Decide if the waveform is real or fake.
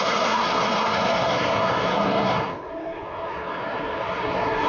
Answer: fake